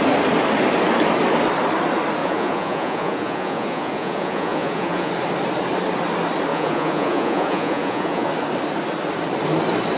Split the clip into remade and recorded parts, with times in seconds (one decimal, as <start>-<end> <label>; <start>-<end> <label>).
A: 0.0-2.2 recorded; 2.2-5.1 remade; 5.1-6.5 recorded; 6.5-8.3 remade; 8.3-10.0 recorded